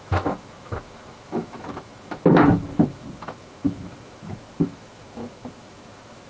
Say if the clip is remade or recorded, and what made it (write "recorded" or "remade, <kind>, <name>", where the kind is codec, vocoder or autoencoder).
remade, autoencoder, DAC-VAE